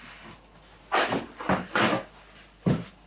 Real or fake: fake